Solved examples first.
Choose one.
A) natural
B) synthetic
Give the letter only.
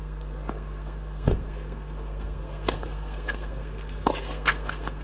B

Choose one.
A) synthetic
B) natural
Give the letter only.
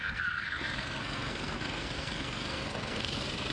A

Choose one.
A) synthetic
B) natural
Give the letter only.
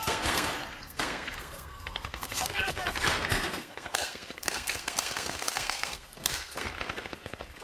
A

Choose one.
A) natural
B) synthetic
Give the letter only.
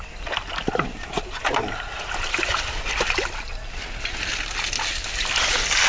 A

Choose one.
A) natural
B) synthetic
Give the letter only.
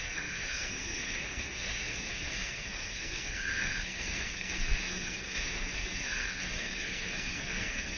B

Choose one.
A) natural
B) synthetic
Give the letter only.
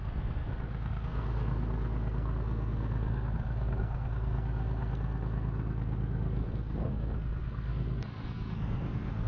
B